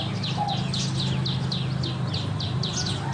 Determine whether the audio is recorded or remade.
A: recorded